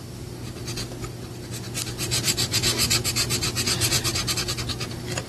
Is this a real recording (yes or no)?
yes